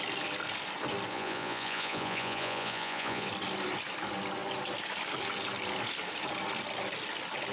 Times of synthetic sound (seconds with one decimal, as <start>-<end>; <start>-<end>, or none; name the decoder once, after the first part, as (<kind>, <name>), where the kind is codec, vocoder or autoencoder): 1.1-3.3 (vocoder, Vocos)